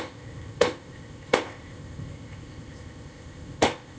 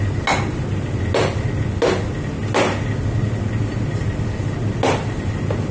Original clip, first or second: second